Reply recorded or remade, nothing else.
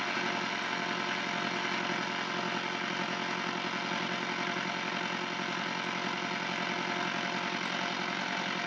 recorded